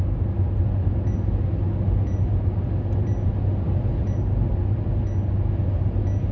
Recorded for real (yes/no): yes